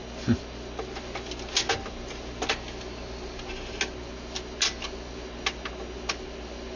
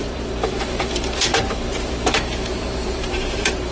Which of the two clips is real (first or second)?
first